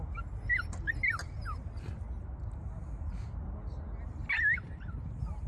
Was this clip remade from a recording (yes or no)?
no